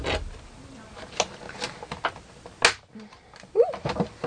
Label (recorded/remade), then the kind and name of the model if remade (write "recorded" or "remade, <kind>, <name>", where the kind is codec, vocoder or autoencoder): recorded